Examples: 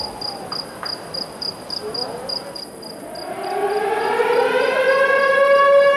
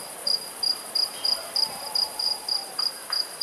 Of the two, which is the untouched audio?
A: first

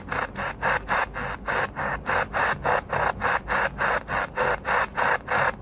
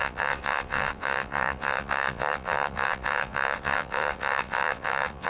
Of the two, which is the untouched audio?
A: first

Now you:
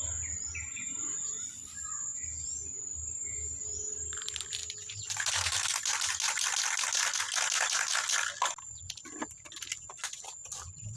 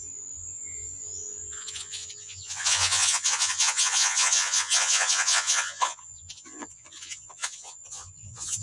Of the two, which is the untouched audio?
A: first